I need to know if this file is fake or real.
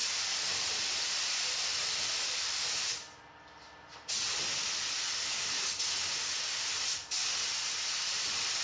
real